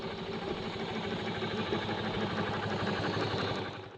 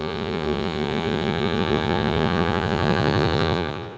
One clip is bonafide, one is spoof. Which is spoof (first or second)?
second